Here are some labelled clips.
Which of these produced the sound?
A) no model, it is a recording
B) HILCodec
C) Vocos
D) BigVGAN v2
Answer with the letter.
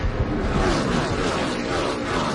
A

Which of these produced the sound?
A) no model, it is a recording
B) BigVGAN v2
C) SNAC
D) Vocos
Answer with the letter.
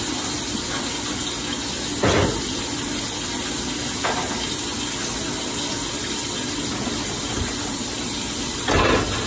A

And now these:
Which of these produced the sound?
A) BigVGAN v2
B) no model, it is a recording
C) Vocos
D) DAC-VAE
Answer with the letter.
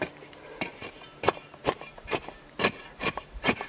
A